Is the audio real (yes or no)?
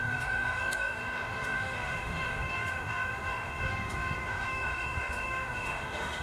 no